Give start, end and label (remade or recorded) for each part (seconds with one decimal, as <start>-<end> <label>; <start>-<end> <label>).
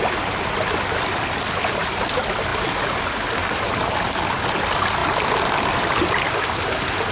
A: 0.0-7.1 recorded